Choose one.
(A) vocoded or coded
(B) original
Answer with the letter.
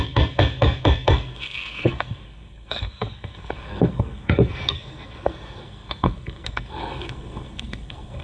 A